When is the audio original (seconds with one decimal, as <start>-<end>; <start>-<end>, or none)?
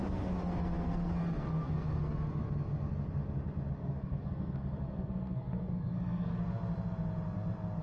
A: 2.4-3.8; 6.4-7.8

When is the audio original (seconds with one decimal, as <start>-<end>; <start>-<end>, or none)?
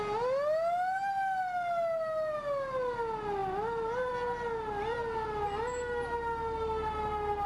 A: 0.0-7.5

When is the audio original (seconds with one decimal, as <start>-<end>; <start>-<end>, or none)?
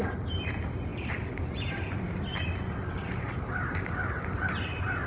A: 0.0-5.1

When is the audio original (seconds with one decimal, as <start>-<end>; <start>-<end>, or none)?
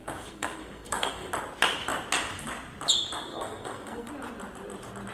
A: 1.3-3.3; 4.1-5.1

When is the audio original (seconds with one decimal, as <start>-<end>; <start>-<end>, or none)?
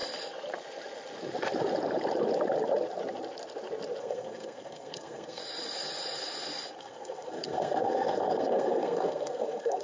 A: 0.0-4.0; 5.4-6.8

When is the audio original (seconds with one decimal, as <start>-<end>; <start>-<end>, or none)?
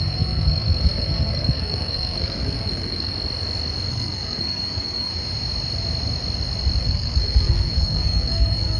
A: 3.1-3.9; 5.1-6.8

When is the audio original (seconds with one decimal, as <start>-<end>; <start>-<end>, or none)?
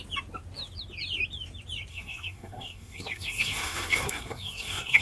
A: 0.0-1.9